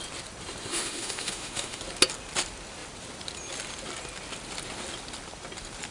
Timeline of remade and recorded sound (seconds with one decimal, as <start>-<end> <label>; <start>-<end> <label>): 0.0-0.7 recorded; 0.7-1.8 remade; 1.8-5.9 recorded